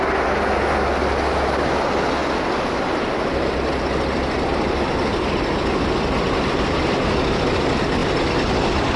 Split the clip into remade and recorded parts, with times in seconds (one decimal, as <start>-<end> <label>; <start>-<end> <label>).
0.0-9.0 recorded